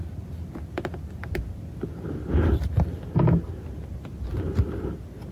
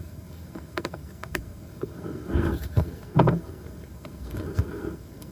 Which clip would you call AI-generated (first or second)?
second